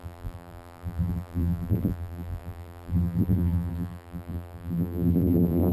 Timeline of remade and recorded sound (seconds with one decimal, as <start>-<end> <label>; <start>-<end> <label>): 0.0-5.7 remade